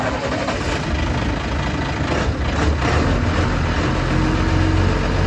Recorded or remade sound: recorded